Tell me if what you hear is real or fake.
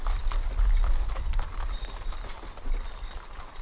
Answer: fake